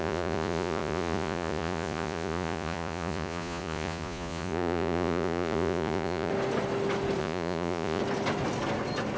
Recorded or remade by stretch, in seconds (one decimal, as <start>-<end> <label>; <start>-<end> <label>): 0.0-6.3 remade; 6.3-7.2 recorded; 7.2-8.0 remade; 8.0-9.2 recorded